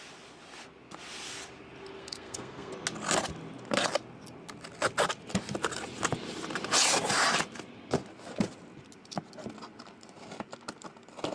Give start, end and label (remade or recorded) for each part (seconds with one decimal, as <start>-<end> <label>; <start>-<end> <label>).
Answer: 0.0-2.0 recorded; 2.0-2.7 remade; 2.7-11.3 recorded